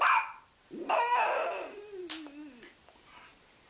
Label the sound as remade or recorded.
recorded